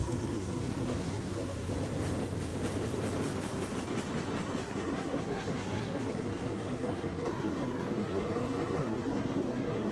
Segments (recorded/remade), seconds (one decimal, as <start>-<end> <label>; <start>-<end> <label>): 0.0-1.7 remade; 1.7-4.6 recorded; 4.6-9.9 remade